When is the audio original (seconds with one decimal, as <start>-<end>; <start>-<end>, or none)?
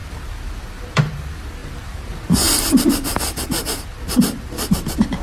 0.8-1.6; 2.1-3.1; 3.8-5.2